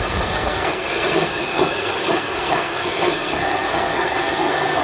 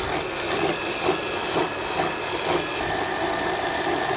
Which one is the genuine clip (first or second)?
second